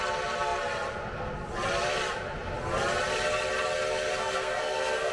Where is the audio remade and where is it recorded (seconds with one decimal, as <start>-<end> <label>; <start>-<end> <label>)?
0.0-4.2 recorded; 4.2-5.1 remade